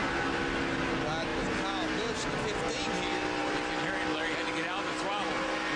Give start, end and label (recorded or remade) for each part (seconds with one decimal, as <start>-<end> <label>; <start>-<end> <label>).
0.0-5.8 recorded